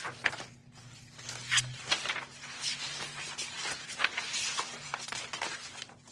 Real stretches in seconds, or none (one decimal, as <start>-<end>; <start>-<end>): 0.0-6.1